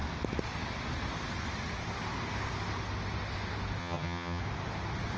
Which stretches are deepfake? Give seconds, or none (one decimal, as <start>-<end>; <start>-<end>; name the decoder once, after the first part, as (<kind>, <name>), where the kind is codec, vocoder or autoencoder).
3.8-4.4 (vocoder, HiFi-GAN)